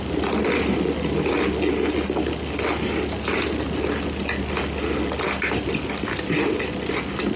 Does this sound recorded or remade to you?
recorded